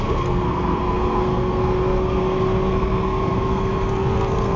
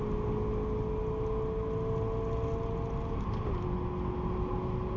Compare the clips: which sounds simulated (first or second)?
first